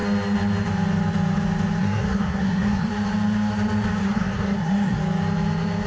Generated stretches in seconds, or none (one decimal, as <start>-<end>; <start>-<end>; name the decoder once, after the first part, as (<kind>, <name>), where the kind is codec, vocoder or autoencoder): 1.8-2.9 (codec, SNAC); 4.0-5.0